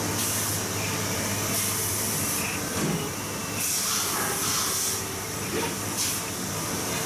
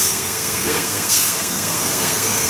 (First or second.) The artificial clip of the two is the second